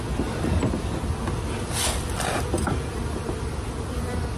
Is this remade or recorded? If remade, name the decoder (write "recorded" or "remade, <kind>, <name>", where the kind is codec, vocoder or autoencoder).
recorded